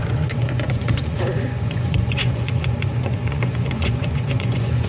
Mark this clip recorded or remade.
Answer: remade